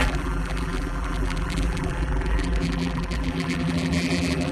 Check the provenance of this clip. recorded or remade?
remade